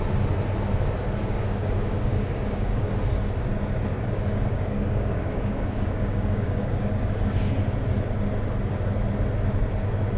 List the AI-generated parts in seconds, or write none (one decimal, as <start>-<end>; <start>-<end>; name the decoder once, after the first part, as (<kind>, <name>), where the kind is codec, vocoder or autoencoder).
1.2-2.9 (codec, DAC); 3.9-7.5